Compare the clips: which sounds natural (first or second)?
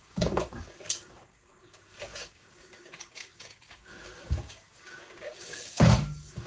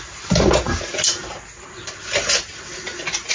second